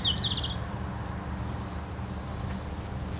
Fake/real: real